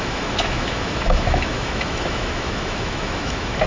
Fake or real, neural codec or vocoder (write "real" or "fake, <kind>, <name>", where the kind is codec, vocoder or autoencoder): fake, autoencoder, DAC-VAE